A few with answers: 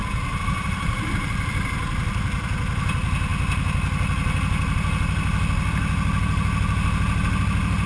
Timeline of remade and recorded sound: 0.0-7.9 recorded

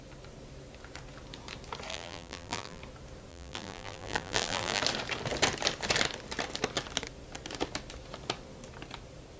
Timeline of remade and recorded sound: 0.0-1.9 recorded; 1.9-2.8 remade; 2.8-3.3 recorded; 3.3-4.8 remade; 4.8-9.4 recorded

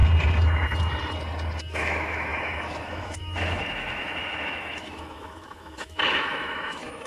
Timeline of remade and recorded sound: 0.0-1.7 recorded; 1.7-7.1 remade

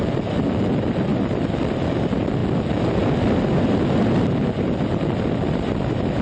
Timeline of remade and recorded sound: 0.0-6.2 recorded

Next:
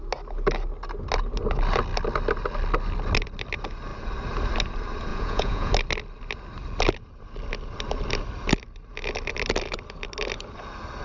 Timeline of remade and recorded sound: 0.0-5.1 recorded; 5.1-5.7 remade; 5.7-11.0 recorded

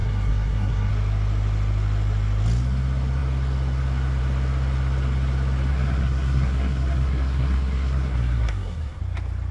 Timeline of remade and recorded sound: 0.0-0.9 remade; 0.9-5.7 recorded; 5.7-9.0 remade; 9.0-9.5 recorded

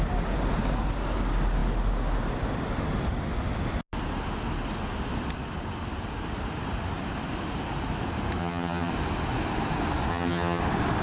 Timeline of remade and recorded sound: 0.0-8.4 recorded; 8.4-8.9 remade; 8.9-10.1 recorded; 10.1-10.6 remade; 10.6-11.0 recorded